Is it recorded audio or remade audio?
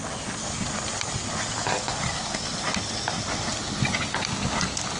recorded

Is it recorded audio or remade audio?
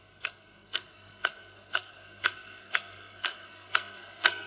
remade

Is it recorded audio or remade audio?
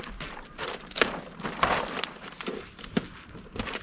recorded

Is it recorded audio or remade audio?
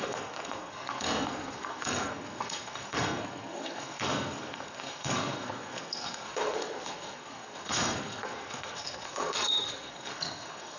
remade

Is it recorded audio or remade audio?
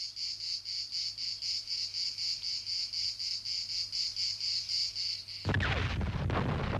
recorded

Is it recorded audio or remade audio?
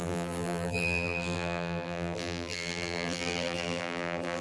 remade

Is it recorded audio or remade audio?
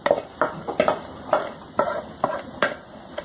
recorded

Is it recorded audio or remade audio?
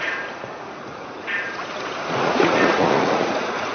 remade